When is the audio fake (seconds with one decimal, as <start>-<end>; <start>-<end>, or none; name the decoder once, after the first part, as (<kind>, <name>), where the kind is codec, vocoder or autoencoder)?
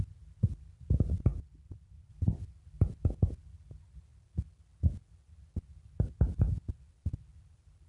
none